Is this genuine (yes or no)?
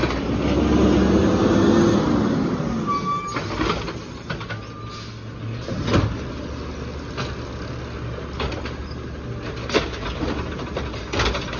yes